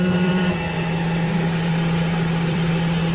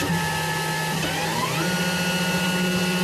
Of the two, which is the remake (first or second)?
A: first